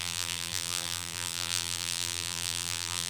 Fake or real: fake